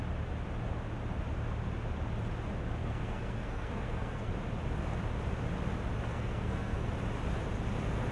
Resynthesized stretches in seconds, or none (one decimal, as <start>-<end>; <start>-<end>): 2.8-4.3; 6.1-6.9